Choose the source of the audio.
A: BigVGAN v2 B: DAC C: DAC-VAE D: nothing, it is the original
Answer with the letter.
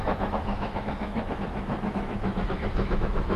C